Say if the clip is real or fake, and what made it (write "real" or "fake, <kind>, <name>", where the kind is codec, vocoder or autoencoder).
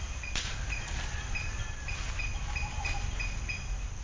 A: real